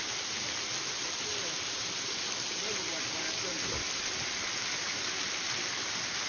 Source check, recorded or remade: recorded